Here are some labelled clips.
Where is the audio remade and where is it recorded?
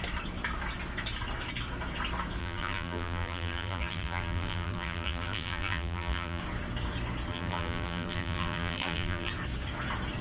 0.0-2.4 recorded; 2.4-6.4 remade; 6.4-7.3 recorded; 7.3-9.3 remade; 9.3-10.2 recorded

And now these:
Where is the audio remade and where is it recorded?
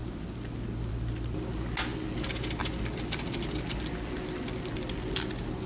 0.0-5.7 recorded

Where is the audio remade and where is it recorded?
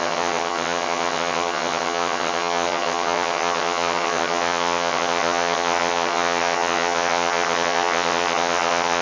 0.0-9.0 remade